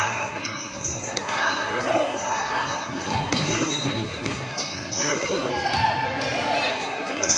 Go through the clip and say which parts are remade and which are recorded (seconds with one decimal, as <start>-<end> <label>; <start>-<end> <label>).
0.0-5.5 remade; 5.5-6.7 recorded; 6.7-7.4 remade